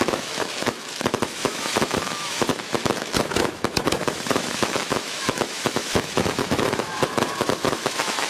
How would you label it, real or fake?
fake